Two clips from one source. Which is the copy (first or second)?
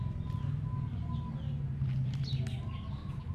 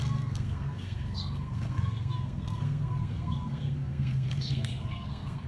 second